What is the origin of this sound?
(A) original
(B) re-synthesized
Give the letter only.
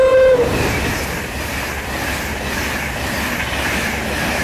A